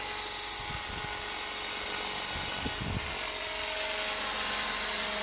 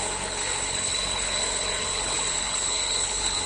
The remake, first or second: second